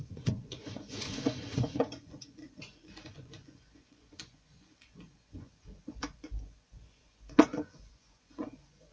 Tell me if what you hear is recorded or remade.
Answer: remade